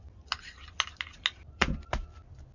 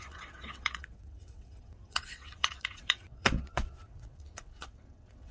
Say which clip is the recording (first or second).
first